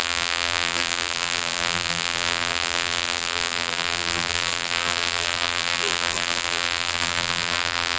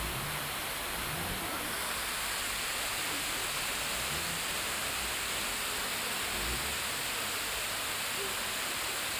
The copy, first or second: first